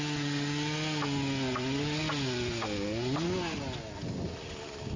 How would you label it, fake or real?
real